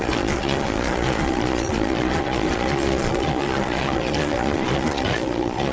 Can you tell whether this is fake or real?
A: fake